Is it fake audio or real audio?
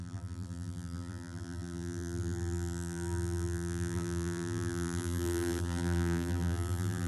fake